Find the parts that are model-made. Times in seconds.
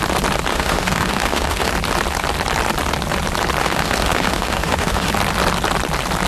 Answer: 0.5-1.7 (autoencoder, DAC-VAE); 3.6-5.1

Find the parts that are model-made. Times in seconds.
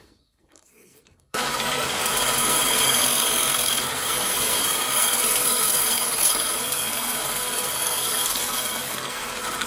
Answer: 0.0-9.7 (codec, SNAC)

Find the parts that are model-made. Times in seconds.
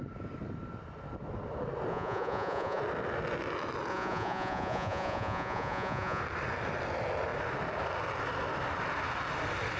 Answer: 1.9-2.8 (vocoder, Vocos); 3.9-6.2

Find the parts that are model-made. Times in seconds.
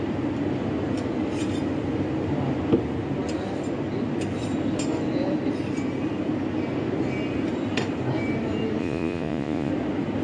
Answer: 8.8-9.7 (vocoder, Vocos)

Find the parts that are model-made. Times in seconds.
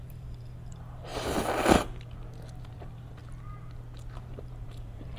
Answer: 0.0-1.1 (vocoder, BigVGAN v2); 2.6-3.2; 4.1-5.2